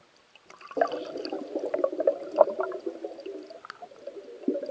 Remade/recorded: recorded